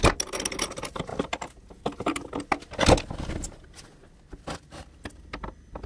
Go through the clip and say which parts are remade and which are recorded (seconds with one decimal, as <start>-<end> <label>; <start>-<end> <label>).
0.0-5.9 recorded